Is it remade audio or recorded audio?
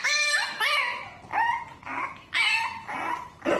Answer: recorded